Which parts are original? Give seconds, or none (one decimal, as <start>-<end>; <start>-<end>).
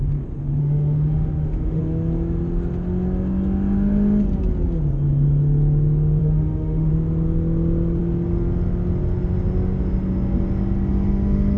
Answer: 0.0-0.6; 1.8-6.2; 6.9-11.6